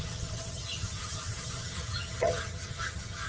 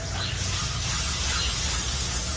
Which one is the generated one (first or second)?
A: first